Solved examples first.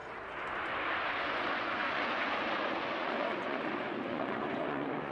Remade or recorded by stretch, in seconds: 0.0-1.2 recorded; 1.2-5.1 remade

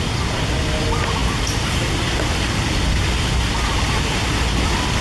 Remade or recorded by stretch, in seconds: 0.0-5.0 recorded

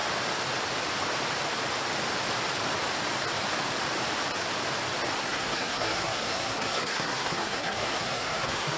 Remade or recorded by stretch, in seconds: 0.0-5.2 recorded; 5.2-8.8 remade

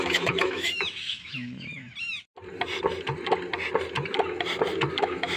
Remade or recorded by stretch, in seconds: 0.0-1.7 remade; 1.7-4.9 recorded; 4.9-5.4 remade

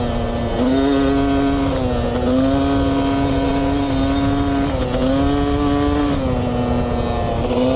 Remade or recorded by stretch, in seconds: 0.0-7.8 recorded

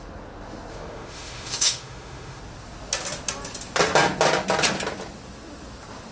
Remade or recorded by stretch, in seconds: 0.0-0.7 recorded; 0.7-2.4 remade; 2.4-6.1 recorded